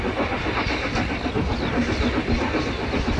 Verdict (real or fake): real